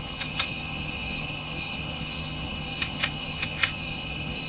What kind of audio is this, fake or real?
fake